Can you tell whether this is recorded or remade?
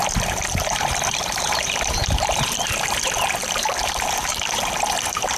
remade